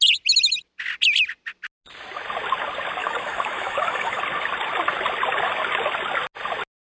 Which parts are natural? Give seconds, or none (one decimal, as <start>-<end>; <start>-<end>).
0.0-3.0; 4.2-6.9